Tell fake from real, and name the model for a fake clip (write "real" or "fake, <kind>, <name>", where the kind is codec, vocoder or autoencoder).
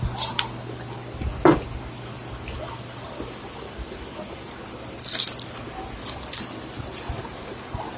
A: real